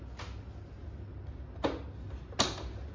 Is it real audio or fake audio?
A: real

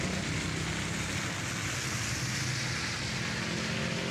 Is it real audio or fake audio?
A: real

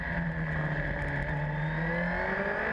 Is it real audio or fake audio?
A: real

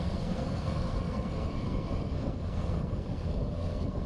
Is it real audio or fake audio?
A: fake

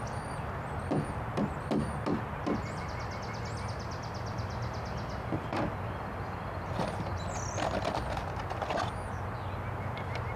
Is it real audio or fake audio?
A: real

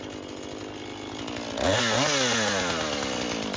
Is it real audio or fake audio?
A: real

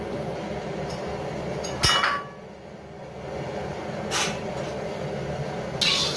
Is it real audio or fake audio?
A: real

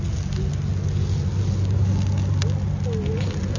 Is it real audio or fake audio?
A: real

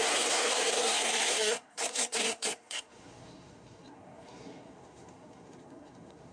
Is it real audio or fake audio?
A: fake